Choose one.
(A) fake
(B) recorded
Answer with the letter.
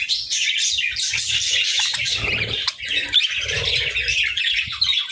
B